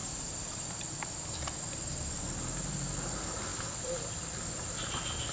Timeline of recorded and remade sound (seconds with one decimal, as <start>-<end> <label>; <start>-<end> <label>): 0.0-2.2 remade; 2.2-5.3 recorded